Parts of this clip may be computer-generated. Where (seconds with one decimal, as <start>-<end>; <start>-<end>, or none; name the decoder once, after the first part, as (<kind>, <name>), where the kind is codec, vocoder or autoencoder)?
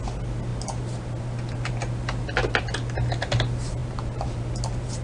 3.8-4.4 (vocoder, BigVGAN v2)